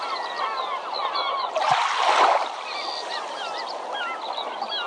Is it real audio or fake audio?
real